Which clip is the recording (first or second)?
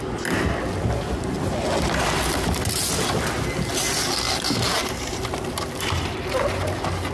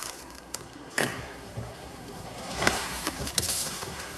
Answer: first